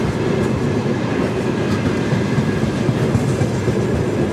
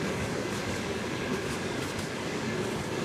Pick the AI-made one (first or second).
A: second